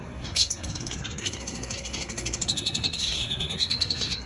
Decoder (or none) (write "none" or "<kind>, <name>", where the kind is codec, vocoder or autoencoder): codec, SNAC